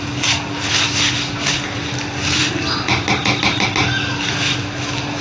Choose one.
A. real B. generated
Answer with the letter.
A